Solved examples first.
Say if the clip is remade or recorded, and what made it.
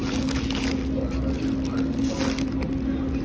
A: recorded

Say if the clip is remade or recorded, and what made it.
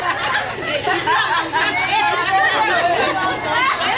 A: recorded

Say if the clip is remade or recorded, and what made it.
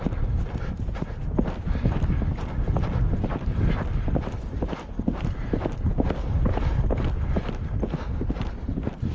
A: recorded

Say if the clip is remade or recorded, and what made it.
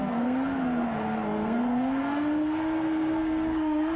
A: remade, codec, SNAC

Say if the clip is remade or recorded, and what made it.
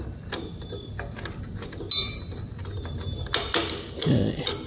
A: recorded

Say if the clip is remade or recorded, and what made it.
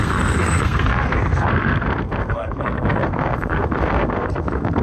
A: remade, codec, SNAC